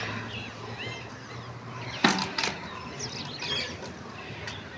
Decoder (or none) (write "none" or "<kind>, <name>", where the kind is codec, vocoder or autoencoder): none